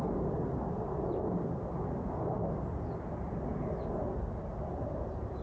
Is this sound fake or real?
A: real